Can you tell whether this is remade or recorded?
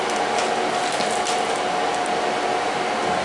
recorded